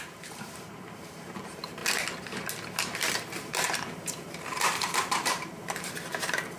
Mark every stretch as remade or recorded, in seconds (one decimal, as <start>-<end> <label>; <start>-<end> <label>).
0.0-1.8 remade; 1.8-3.0 recorded; 3.0-6.6 remade